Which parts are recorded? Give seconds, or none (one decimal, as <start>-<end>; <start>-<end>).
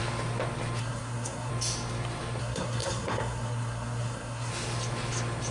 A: 0.0-0.8; 1.5-2.4; 4.5-5.5